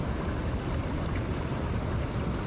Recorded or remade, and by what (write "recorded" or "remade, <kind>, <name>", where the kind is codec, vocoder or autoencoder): recorded